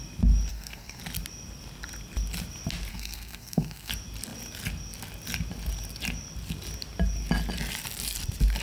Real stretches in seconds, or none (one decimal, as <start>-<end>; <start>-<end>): 0.0-0.5; 1.0-2.9; 3.9-8.6